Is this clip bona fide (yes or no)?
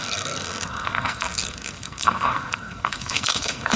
no